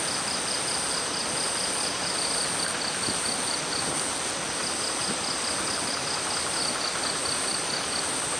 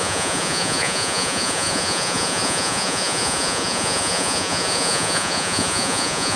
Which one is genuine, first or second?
first